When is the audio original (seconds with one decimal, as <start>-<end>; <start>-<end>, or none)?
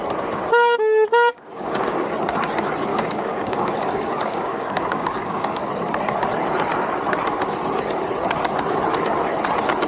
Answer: 0.0-1.3; 2.1-2.9; 5.7-9.9